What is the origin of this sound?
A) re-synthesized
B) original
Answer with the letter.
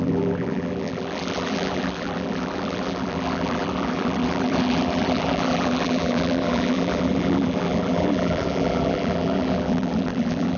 A